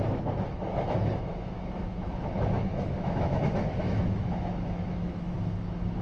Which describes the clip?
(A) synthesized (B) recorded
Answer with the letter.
A